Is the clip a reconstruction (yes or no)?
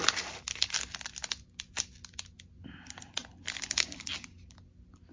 no